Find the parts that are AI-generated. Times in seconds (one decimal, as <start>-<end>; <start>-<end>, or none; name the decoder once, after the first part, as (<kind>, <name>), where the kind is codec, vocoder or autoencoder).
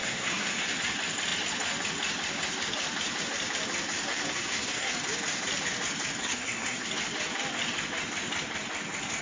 0.0-0.8 (codec, SNAC); 4.1-4.9; 6.2-6.9